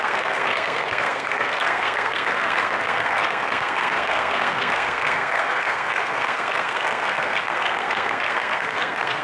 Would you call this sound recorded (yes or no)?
no